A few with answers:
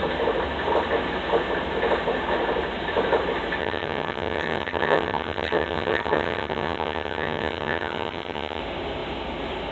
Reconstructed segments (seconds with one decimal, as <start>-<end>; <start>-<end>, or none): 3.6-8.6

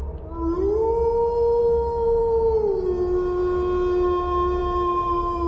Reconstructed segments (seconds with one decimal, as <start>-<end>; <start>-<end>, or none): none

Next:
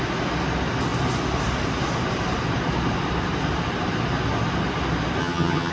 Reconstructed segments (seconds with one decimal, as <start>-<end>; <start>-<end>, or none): 5.2-5.7